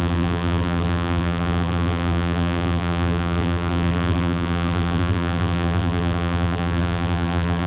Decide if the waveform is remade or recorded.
remade